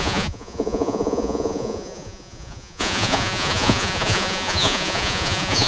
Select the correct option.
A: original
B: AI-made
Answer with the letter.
B